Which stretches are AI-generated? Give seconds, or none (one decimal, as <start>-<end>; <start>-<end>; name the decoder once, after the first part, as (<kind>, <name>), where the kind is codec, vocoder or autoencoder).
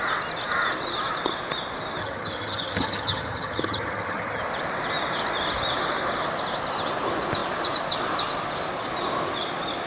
2.0-4.4 (vocoder, HiFi-GAN)